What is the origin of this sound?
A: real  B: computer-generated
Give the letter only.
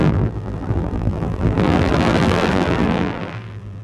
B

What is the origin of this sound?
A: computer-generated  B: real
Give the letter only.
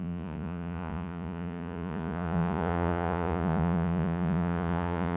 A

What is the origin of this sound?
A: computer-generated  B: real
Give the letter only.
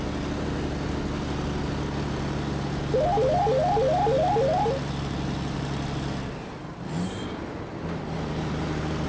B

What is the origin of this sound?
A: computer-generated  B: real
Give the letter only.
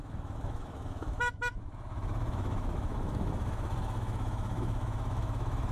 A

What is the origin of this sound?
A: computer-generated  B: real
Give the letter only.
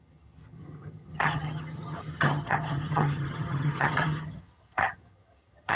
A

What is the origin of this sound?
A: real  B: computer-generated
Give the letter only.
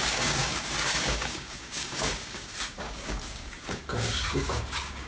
B